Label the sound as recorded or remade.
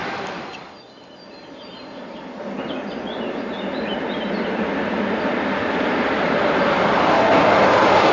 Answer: recorded